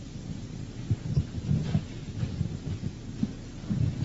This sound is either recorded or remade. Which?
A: recorded